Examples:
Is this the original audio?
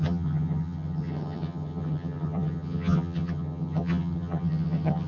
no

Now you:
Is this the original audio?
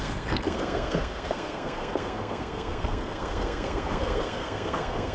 no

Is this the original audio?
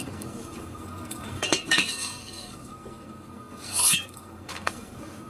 no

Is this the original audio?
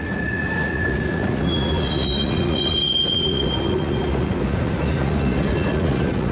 no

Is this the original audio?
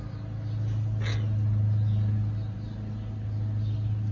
yes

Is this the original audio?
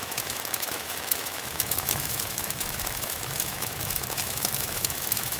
no